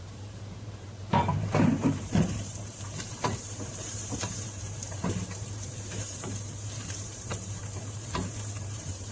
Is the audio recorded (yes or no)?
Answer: no